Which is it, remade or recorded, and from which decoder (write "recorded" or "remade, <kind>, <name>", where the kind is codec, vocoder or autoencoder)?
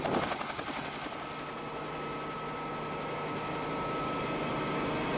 recorded